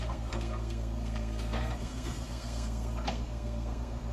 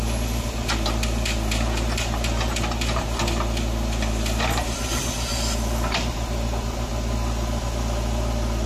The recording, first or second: second